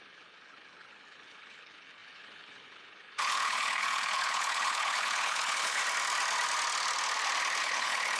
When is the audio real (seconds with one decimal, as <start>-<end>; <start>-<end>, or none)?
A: 5.8-7.6